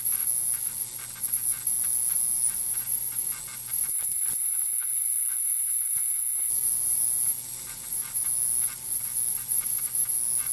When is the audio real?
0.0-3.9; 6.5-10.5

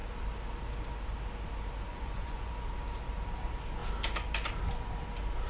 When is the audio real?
0.0-1.9; 2.5-5.5